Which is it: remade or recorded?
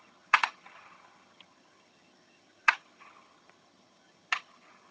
remade